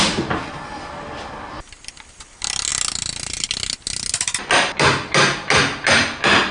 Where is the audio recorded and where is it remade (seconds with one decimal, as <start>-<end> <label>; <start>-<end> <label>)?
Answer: 0.0-6.5 recorded